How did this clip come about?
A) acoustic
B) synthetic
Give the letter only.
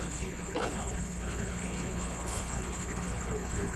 B